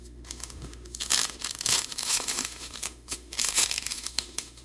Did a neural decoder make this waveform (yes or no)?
yes